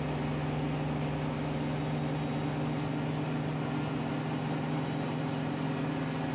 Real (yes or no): yes